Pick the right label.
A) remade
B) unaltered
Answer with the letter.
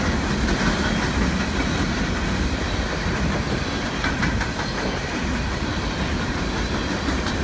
B